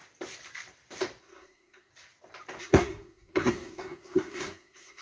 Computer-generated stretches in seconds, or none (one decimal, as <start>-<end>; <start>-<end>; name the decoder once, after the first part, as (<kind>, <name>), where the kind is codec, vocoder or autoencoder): 1.2-1.9 (codec, SNAC); 2.6-5.0